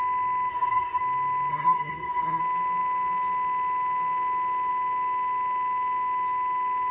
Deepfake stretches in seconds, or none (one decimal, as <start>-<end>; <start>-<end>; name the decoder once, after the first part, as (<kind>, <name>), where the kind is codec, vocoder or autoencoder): 0.5-1.0 (codec, SNAC); 1.5-2.4